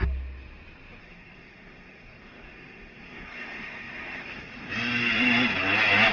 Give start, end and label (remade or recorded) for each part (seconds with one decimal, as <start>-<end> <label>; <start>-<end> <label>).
0.0-1.0 recorded; 1.0-4.7 remade; 4.7-6.1 recorded